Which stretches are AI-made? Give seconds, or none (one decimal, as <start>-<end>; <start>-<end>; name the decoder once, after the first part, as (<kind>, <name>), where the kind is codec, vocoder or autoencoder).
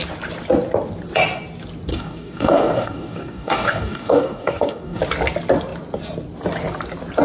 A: 1.9-5.0 (codec, DAC)